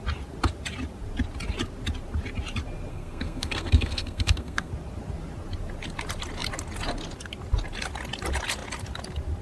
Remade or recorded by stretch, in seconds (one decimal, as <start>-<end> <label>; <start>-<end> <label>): 0.0-2.9 recorded; 2.9-4.7 remade; 4.7-9.4 recorded